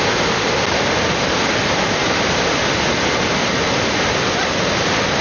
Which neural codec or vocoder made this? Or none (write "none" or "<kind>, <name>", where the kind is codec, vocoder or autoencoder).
none